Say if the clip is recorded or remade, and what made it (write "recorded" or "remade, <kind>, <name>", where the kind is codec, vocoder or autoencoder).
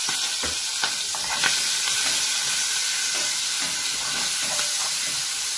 recorded